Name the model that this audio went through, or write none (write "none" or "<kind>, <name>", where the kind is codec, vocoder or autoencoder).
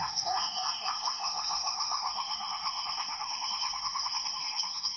codec, SNAC